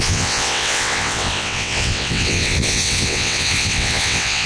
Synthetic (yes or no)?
yes